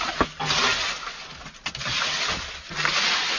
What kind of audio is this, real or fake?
real